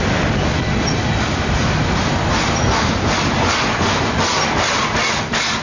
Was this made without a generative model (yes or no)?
yes